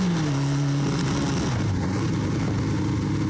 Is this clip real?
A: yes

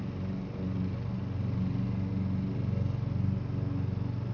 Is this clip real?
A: yes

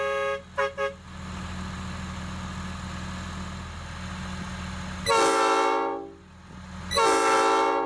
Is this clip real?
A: yes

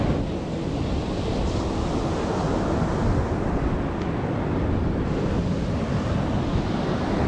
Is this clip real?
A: yes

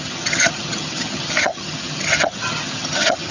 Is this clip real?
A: no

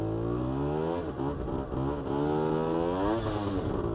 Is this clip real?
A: yes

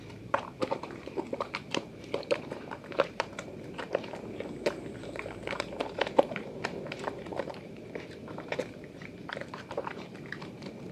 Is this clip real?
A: no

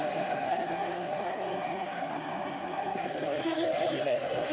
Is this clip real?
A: no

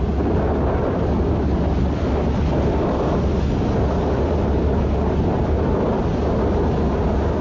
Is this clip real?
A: yes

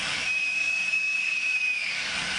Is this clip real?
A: no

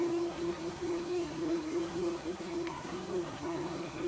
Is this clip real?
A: no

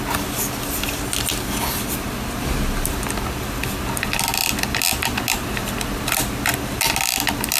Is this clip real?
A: yes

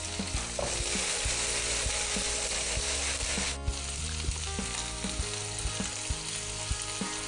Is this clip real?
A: yes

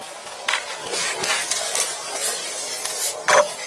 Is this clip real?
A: yes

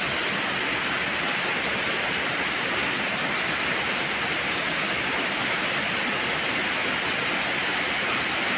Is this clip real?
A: yes